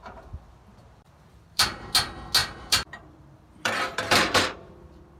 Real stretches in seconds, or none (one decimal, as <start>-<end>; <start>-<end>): 0.0-0.7; 1.9-2.4; 4.7-5.2